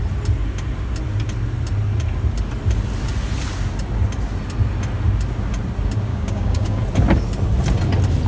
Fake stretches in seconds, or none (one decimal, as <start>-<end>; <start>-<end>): 6.1-6.8